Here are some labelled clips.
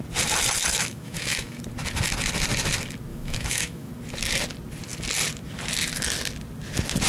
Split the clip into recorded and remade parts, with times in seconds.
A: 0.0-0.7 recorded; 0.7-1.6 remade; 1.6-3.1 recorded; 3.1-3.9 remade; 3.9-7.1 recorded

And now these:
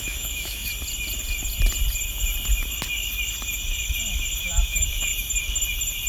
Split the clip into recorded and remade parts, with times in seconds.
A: 0.0-0.7 remade; 0.7-4.4 recorded; 4.4-5.1 remade; 5.1-6.1 recorded

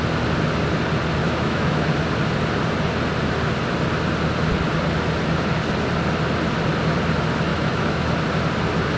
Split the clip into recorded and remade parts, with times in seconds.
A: 0.0-1.2 recorded; 1.2-1.8 remade; 1.8-7.5 recorded; 7.5-8.0 remade; 8.0-9.0 recorded

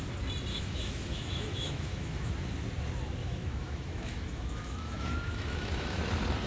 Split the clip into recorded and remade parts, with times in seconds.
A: 0.0-0.5 recorded; 0.5-2.3 remade; 2.3-3.2 recorded; 3.2-6.0 remade; 6.0-6.5 recorded

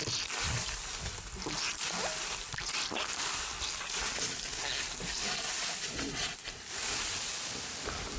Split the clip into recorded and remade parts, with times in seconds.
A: 0.0-8.2 recorded

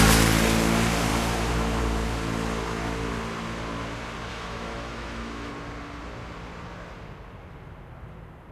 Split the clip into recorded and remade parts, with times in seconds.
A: 0.0-4.3 recorded; 4.3-5.5 remade; 5.5-8.5 recorded

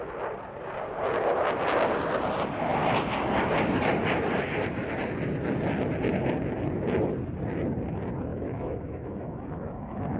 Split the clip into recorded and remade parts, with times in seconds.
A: 0.0-8.3 recorded; 8.3-10.2 remade